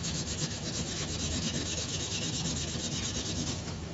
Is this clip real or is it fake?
fake